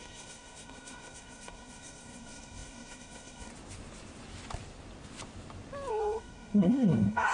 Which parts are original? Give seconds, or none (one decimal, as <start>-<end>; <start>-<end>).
3.5-5.9